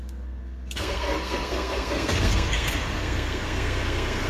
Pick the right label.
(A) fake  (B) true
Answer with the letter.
A